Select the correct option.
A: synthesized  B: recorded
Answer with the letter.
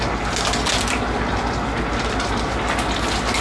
B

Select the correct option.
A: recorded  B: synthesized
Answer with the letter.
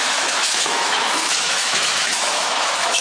B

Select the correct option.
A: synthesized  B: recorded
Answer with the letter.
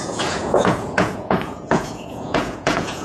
A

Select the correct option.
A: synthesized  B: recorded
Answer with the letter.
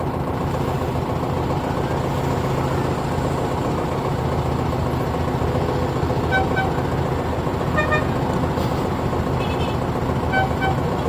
B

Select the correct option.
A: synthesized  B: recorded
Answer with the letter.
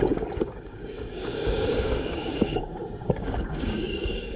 A